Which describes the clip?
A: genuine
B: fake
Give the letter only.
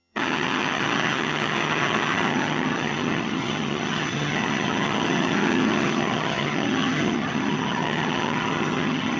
B